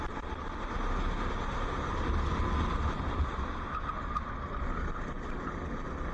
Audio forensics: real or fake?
real